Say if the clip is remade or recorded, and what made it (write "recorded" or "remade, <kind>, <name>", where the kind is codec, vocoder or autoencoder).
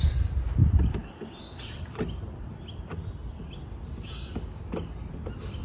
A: recorded